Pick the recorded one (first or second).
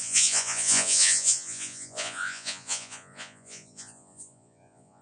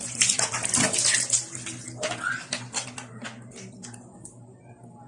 second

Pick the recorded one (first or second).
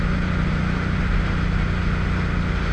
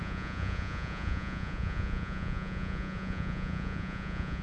first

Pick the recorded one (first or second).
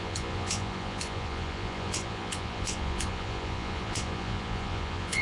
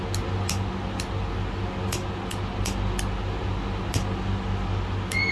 second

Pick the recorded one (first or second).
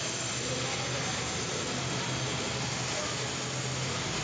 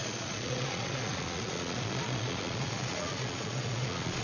first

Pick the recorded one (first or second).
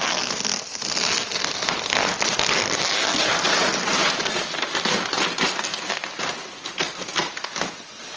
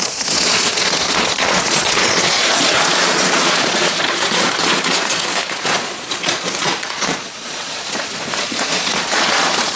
first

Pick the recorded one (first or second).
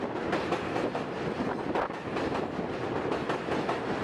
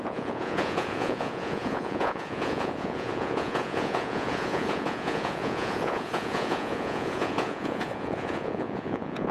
first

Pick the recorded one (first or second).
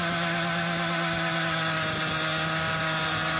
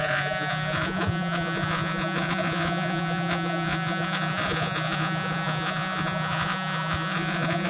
first